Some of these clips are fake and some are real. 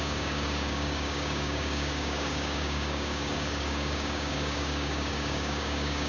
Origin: fake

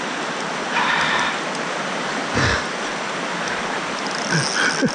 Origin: real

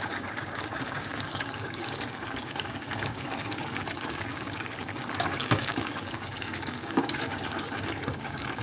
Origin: fake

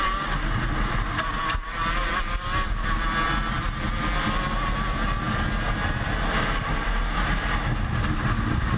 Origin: real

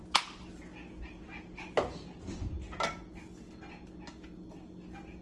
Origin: real